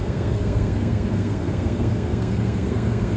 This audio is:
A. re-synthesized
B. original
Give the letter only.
A